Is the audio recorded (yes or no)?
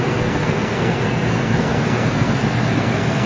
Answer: no